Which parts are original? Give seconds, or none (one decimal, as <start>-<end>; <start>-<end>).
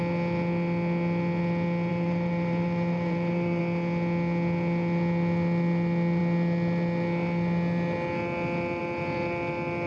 0.0-1.9; 3.6-9.9